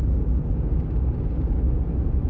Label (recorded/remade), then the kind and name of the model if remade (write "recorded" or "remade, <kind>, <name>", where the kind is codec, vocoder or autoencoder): recorded